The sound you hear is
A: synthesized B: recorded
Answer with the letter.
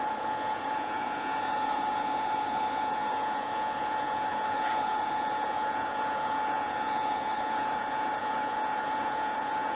A